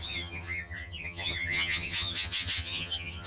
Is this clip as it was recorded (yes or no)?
no